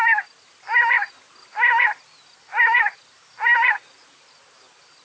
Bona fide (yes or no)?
yes